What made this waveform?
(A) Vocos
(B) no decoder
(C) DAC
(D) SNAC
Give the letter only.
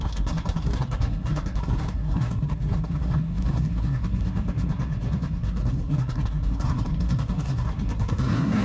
D